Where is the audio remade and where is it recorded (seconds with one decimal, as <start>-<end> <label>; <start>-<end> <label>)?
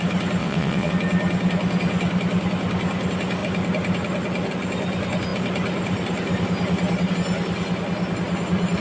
0.0-0.4 recorded; 0.4-0.9 remade; 0.9-8.8 recorded